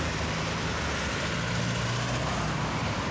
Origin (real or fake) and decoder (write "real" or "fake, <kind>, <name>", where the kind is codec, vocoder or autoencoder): real